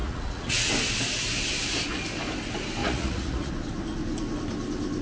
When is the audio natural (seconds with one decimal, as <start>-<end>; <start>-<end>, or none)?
0.7-2.8; 3.5-5.0